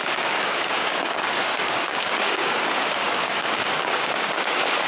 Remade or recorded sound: remade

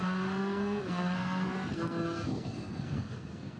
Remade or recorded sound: remade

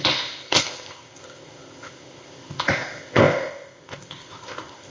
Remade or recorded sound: remade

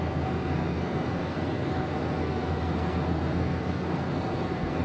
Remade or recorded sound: remade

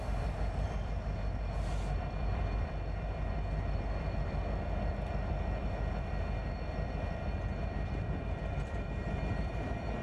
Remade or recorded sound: remade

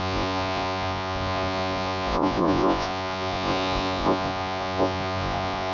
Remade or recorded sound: remade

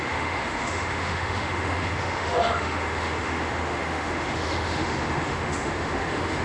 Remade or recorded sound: remade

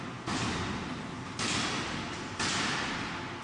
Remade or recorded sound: recorded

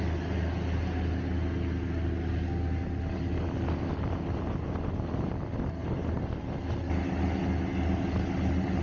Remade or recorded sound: recorded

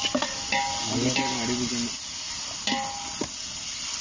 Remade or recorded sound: recorded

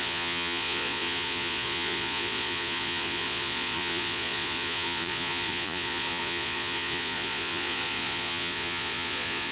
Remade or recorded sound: remade